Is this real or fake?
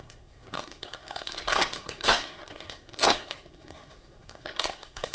fake